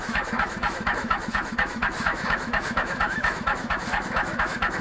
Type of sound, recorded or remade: remade